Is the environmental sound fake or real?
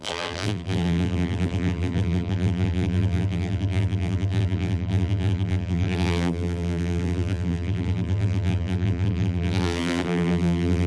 fake